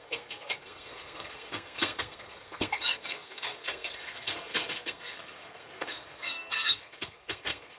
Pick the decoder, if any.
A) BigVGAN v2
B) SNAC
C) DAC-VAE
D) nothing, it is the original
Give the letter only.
B